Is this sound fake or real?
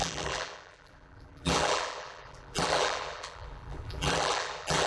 fake